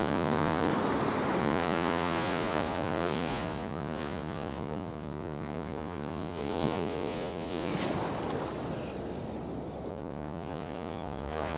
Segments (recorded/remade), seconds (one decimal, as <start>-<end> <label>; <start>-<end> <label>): 0.0-0.7 remade; 0.7-1.4 recorded; 1.4-7.7 remade; 7.7-9.9 recorded; 9.9-11.6 remade